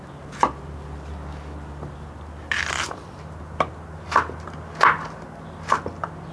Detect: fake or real real